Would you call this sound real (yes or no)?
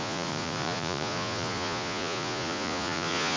no